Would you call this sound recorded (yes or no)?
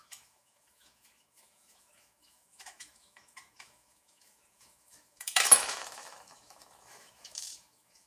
no